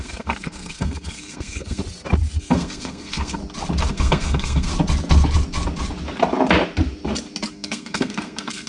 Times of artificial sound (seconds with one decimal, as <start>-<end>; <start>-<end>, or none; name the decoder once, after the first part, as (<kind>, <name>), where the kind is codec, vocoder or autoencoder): 0.0-1.8 (codec, SNAC); 2.4-3.4; 3.9-4.7; 7.5-8.7